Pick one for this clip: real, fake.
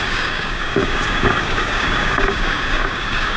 fake